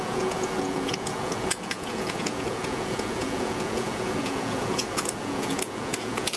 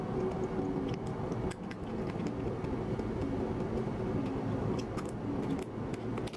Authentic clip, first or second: second